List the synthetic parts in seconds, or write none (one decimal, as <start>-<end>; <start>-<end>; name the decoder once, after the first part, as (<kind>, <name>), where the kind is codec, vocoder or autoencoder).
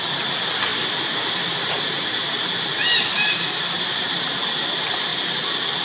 0.7-4.2 (vocoder, BigVGAN v2)